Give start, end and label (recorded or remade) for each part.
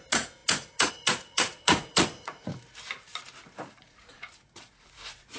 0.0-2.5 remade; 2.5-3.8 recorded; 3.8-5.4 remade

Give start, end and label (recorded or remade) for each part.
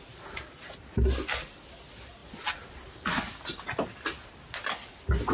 0.0-5.3 recorded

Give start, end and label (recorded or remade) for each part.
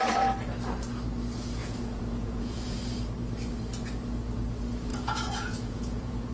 0.0-1.6 recorded; 1.6-2.8 remade; 2.8-4.9 recorded; 4.9-6.3 remade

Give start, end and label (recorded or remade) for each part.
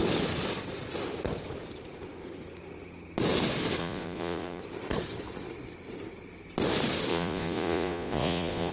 0.0-3.8 recorded; 3.8-4.6 remade; 4.6-7.1 recorded; 7.1-8.7 remade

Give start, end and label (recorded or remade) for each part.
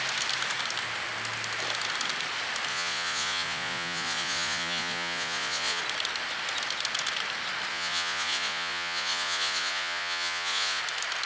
0.0-2.7 recorded; 2.7-5.8 remade; 5.8-7.7 recorded; 7.7-10.8 remade; 10.8-11.3 recorded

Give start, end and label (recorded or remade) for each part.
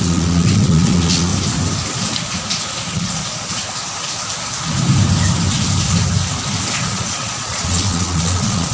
0.0-1.3 remade; 1.3-2.9 recorded; 2.9-3.6 remade; 3.6-6.8 recorded; 6.8-8.7 remade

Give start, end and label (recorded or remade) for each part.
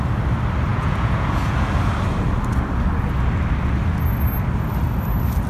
0.0-0.7 recorded; 0.7-1.6 remade; 1.6-5.5 recorded